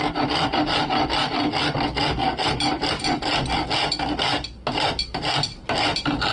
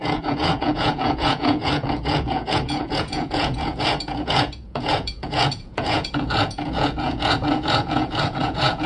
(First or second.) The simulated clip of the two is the second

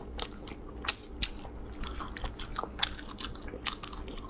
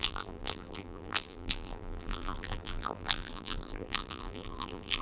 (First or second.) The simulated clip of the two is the second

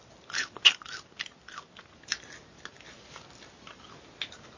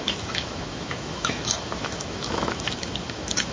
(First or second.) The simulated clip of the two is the second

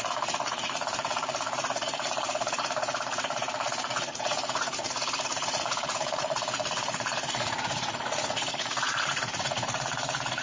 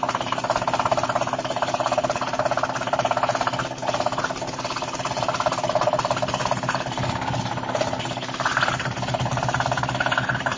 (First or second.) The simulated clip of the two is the first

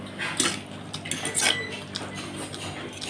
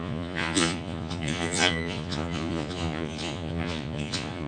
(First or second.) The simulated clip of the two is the second